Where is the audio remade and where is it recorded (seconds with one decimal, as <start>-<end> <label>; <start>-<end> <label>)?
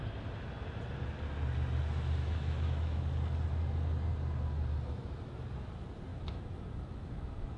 0.0-2.2 recorded; 2.2-3.0 remade; 3.0-6.1 recorded; 6.1-7.6 remade